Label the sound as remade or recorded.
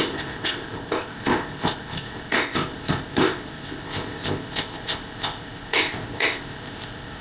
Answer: remade